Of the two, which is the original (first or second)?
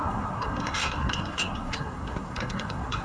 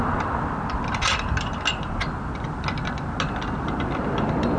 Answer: second